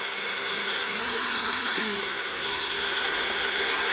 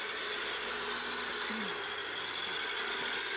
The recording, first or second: second